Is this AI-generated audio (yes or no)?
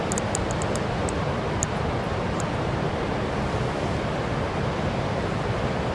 no